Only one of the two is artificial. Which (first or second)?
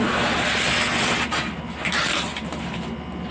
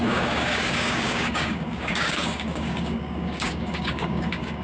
second